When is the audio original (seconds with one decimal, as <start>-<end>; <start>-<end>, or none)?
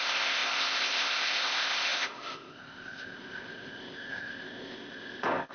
none